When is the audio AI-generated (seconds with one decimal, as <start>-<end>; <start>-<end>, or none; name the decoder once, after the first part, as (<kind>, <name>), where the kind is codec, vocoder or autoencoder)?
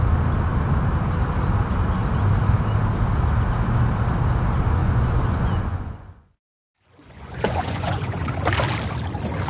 4.8-8.4 (vocoder, Vocos)